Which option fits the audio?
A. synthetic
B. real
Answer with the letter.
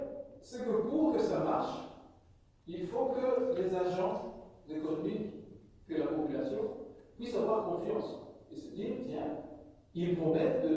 B